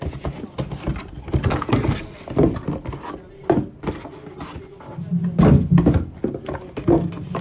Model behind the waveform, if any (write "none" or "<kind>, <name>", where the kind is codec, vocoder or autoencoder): none